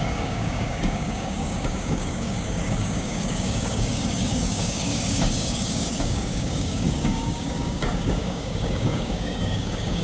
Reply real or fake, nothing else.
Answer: fake